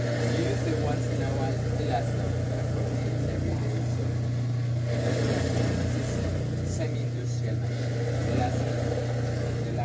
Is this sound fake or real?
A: real